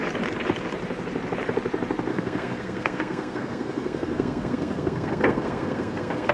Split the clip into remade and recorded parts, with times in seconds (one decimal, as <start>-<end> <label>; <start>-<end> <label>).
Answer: 0.0-2.1 recorded; 2.1-6.3 remade